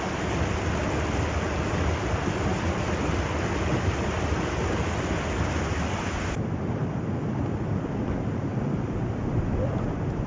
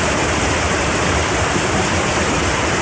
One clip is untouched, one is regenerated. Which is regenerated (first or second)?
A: second